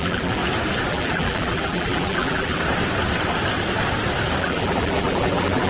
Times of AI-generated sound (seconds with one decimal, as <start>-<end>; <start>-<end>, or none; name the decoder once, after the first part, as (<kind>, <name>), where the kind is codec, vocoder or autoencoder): 0.0-0.4 (vocoder, BigVGAN v2); 0.9-2.6; 4.4-5.7